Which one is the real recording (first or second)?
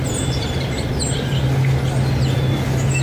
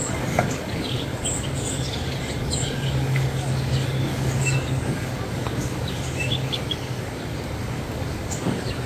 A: first